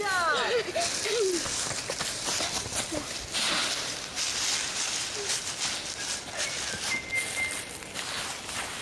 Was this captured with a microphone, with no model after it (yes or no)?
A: yes